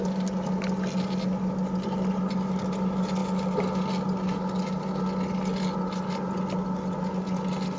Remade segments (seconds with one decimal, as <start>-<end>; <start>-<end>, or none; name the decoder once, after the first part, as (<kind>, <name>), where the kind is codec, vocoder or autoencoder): none